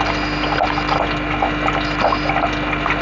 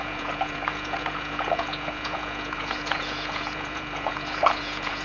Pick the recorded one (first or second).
first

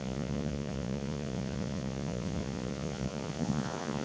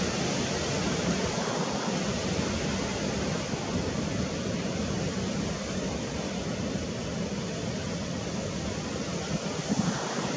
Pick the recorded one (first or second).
second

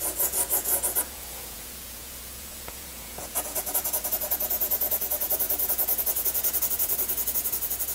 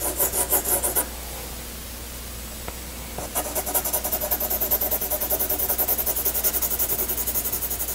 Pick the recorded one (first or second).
second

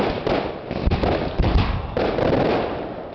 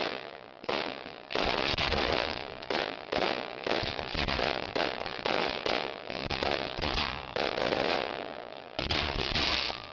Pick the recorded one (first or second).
first